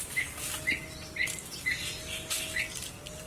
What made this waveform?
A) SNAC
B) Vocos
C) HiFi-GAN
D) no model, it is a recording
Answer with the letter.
D